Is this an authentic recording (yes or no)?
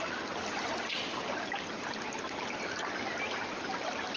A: yes